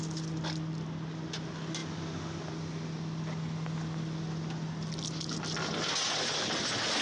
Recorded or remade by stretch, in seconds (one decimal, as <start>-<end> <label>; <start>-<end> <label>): 0.0-7.0 recorded